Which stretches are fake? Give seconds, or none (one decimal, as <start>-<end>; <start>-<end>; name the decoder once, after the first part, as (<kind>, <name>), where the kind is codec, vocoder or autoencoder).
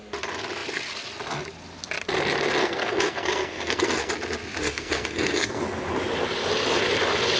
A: 2.6-4.1 (codec, SNAC); 4.6-5.6